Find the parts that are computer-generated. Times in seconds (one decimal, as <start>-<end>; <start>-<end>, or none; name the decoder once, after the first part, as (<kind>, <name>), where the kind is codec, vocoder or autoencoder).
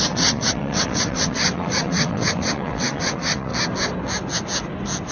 0.0-3.5 (vocoder, WaveNeXt)